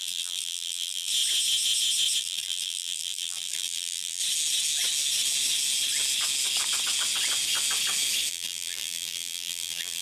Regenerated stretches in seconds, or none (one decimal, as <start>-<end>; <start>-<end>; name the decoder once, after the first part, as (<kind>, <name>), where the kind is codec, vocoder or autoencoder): 0.0-1.1 (vocoder, BigVGAN v2); 2.2-4.2; 8.3-10.0